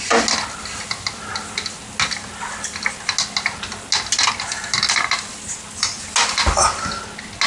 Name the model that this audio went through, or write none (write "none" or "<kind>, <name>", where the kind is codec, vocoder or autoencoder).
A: none